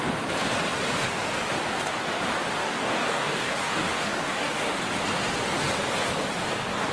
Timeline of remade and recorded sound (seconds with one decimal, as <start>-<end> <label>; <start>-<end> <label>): 0.0-2.6 recorded; 2.6-4.7 remade; 4.7-6.9 recorded

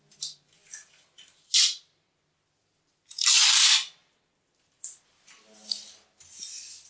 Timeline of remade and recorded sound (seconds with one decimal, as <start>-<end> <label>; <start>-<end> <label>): 0.0-6.9 recorded

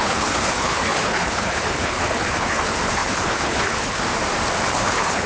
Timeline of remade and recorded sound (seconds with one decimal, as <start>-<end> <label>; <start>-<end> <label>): 0.0-4.0 remade; 4.0-4.7 recorded; 4.7-5.3 remade

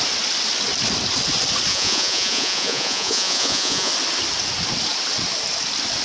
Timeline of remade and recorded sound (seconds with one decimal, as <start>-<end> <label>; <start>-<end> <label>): 0.0-1.7 recorded; 1.7-3.9 remade; 3.9-6.0 recorded

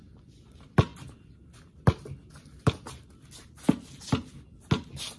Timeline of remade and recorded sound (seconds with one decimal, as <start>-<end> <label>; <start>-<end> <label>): 0.0-5.2 recorded